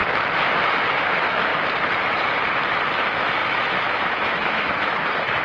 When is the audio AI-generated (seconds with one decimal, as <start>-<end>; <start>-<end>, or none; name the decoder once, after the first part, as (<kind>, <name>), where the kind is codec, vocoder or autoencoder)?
0.9-1.5 (autoencoder, DAC-VAE); 2.9-5.4